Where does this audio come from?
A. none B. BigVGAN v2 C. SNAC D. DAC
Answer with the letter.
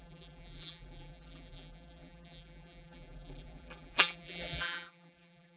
B